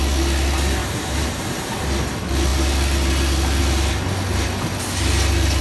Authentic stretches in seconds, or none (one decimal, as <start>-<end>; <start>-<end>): 0.0-0.8; 1.3-5.6